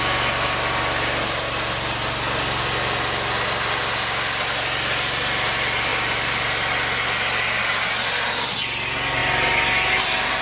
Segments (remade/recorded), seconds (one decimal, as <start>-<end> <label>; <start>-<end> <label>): 0.0-10.4 recorded